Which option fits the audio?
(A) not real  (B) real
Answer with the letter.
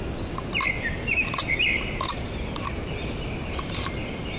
B